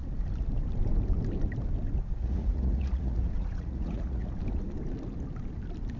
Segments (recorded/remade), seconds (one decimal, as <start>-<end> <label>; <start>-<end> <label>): 0.0-2.1 recorded; 2.1-4.3 remade; 4.3-6.0 recorded